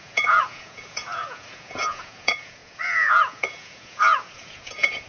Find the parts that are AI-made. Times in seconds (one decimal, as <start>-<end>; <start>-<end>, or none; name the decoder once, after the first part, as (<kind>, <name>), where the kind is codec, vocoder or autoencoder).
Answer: 0.0-5.1 (vocoder, Vocos)

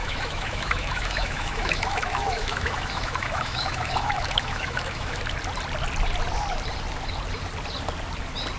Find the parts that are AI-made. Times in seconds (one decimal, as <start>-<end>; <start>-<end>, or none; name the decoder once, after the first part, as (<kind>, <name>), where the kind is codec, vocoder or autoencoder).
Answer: 0.0-5.2 (autoencoder, DAC-VAE)

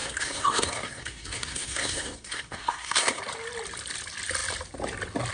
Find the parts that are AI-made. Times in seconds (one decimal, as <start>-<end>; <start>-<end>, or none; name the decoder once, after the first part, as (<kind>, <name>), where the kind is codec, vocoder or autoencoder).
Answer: 0.0-3.2 (codec, SNAC)

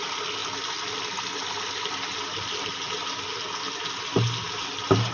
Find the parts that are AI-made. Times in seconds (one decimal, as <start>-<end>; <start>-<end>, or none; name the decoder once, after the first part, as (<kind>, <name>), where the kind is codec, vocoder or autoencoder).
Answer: none